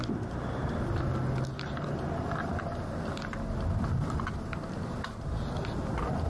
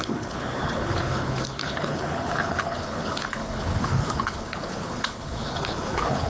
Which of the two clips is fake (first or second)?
second